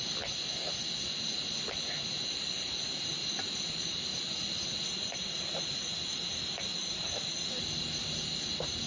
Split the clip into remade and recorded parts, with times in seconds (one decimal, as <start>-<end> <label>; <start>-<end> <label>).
0.0-8.9 recorded